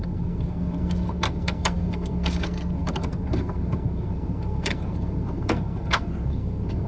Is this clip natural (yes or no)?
no